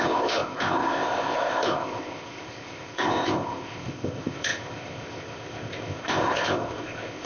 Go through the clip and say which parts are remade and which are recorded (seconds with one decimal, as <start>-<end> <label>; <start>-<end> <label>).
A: 0.0-7.3 remade